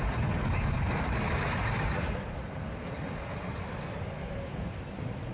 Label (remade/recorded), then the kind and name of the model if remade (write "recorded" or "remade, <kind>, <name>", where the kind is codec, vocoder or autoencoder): remade, vocoder, BigVGAN v2